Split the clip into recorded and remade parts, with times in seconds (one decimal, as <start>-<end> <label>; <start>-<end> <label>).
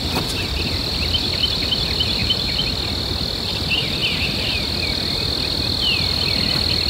0.0-2.2 recorded; 2.2-2.7 remade; 2.7-6.9 recorded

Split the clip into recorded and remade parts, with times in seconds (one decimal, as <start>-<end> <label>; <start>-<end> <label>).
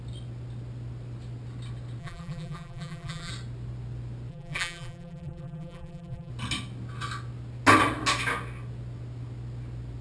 0.0-2.0 recorded; 2.0-3.3 remade; 3.3-4.3 recorded; 4.3-6.3 remade; 6.3-10.0 recorded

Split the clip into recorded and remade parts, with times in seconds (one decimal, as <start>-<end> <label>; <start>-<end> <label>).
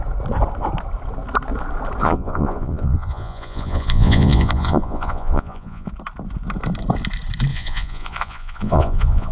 0.0-2.0 recorded; 2.0-5.9 remade; 5.9-7.5 recorded; 7.5-9.3 remade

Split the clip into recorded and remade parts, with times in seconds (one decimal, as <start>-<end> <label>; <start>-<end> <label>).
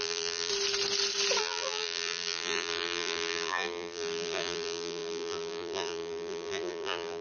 0.0-0.5 remade; 0.5-1.4 recorded; 1.4-7.2 remade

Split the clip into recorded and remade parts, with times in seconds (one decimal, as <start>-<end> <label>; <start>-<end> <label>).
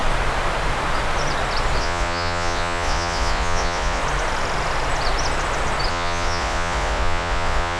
0.0-1.8 recorded; 1.8-4.0 remade; 4.0-5.9 recorded; 5.9-7.8 remade